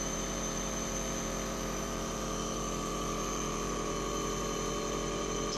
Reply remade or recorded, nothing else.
remade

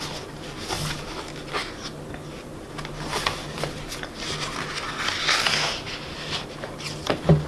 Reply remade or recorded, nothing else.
recorded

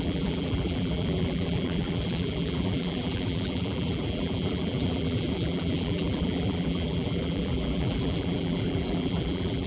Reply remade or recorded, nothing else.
remade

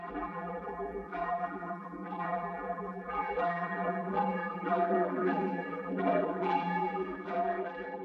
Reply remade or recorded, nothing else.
remade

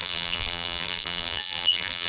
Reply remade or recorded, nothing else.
remade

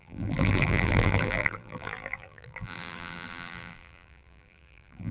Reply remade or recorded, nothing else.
remade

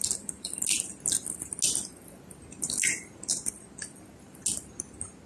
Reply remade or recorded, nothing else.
recorded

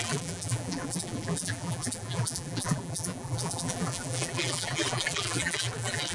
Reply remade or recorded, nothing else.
remade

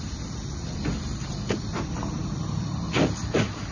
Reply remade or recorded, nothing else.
remade